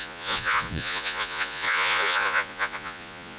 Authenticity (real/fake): fake